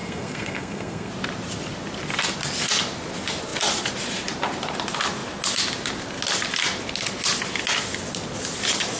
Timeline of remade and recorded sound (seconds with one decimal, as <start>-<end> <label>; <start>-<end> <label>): 0.0-1.1 remade; 1.1-9.0 recorded